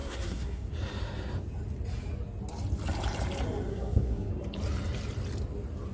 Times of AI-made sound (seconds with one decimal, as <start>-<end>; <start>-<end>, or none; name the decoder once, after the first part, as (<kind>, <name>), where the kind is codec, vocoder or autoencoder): 0.0-0.7 (codec, SNAC); 3.7-4.3